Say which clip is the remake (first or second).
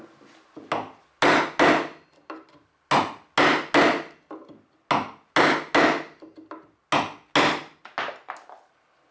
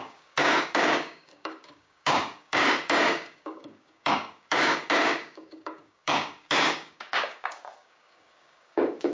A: second